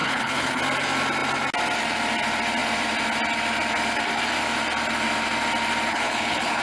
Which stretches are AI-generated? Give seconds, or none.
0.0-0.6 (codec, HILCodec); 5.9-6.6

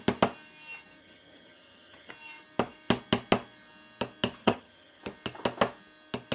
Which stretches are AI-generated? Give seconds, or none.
1.0-2.1 (vocoder, HiFi-GAN); 4.4-5.0